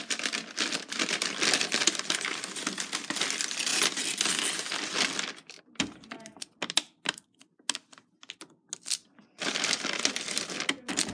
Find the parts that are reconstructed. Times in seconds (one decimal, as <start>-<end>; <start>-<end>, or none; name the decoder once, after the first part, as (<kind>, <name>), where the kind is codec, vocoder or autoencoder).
none